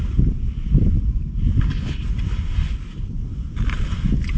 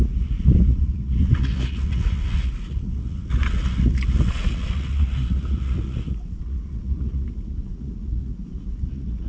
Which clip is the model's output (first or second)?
second